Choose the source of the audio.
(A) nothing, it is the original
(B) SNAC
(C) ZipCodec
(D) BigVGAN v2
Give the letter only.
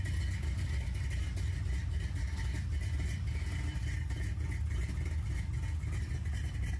A